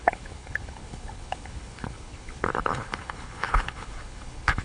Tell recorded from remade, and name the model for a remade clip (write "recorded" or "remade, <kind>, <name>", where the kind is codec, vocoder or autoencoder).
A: remade, codec, HILCodec